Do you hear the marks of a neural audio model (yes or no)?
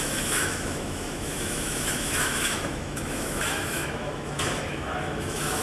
yes